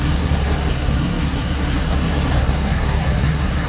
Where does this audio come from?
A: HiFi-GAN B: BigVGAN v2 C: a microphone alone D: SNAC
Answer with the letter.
D